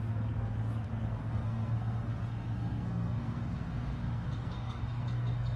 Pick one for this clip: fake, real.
fake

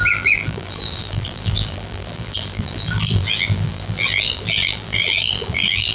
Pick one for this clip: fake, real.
fake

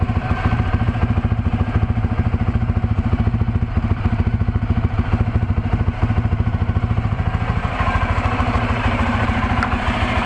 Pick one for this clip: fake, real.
fake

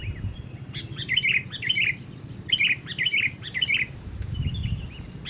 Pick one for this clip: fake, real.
real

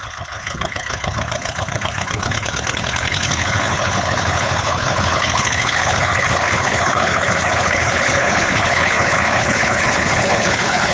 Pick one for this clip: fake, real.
fake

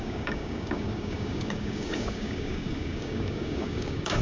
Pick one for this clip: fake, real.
fake